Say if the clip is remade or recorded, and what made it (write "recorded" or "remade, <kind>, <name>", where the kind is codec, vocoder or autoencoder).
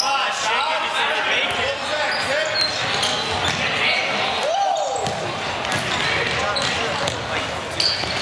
recorded